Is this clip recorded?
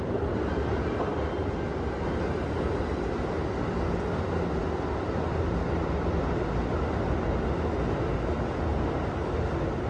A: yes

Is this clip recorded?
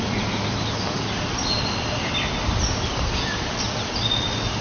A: yes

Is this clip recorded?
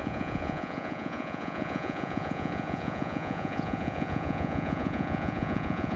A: no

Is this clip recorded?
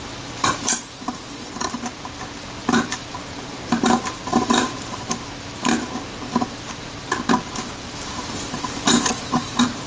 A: no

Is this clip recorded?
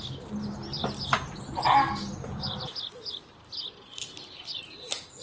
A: no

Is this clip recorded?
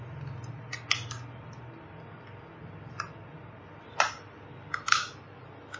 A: yes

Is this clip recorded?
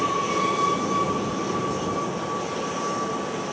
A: yes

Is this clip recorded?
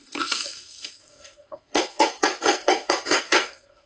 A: no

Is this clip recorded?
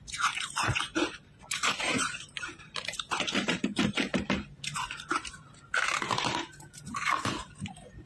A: no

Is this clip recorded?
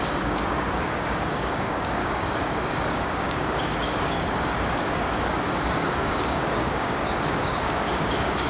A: no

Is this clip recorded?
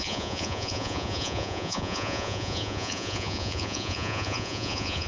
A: no